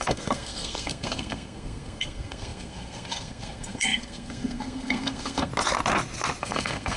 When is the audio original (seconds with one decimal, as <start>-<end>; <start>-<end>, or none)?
5.5-6.4